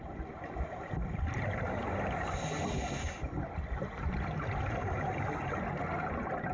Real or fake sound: real